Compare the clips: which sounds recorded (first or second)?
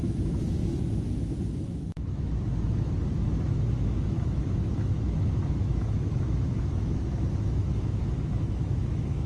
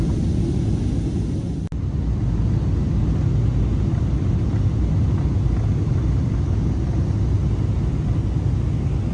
second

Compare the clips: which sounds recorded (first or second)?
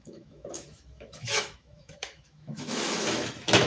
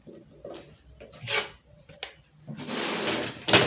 second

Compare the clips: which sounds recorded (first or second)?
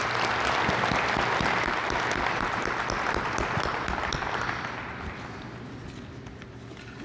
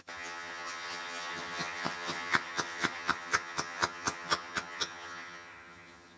first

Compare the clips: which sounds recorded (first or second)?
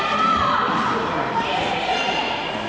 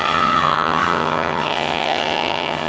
first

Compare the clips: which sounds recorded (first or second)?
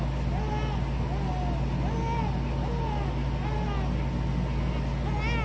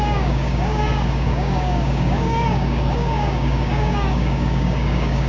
first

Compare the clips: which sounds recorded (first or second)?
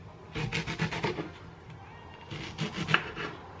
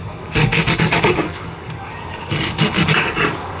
first